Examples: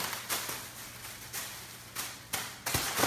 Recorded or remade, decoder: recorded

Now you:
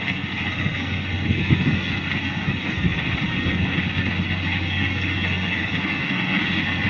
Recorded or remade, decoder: remade, codec, SNAC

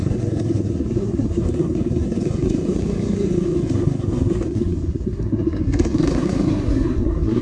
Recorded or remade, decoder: remade, codec, SNAC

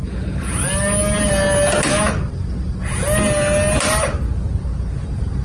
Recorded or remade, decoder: recorded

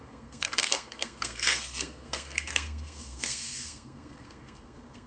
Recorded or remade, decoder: remade, codec, SNAC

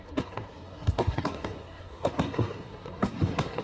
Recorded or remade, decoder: remade, codec, SNAC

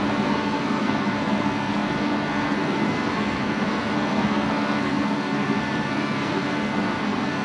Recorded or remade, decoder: remade, codec, SNAC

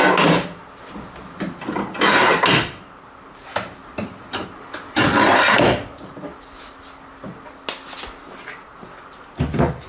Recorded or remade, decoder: recorded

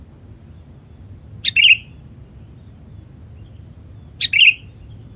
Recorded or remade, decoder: recorded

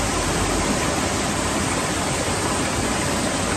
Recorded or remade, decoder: recorded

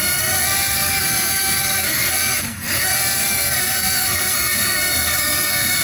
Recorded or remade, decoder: remade, codec, SNAC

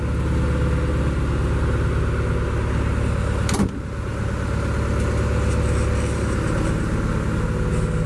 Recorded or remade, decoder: recorded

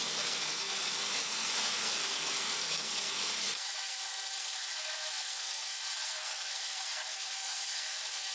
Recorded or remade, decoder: remade, codec, SNAC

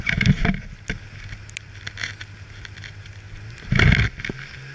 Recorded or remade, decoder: recorded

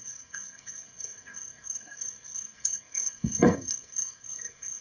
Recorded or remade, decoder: remade, codec, SNAC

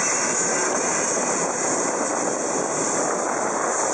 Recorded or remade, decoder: recorded